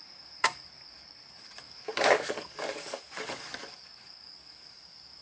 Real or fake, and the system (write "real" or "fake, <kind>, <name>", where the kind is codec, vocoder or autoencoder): fake, codec, DAC